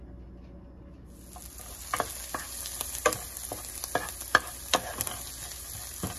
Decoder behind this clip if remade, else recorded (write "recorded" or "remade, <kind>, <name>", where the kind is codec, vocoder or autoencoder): recorded